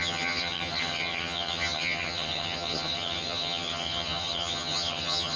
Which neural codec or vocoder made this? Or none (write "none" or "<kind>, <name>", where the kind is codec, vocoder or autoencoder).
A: vocoder, HiFi-GAN